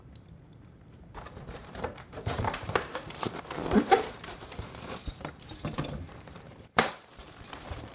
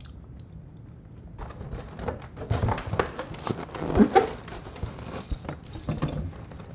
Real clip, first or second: second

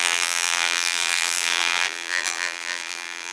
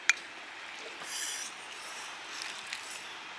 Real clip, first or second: second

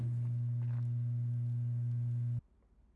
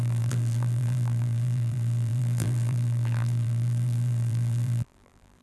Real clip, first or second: first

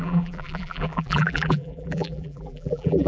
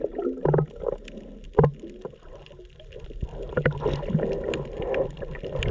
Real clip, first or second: second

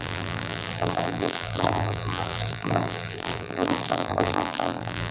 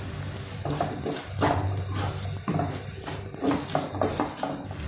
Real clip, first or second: second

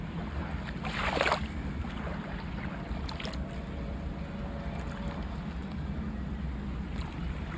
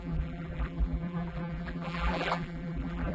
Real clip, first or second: first